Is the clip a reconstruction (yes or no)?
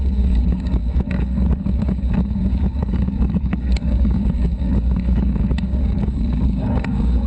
yes